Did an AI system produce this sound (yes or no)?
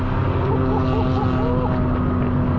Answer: no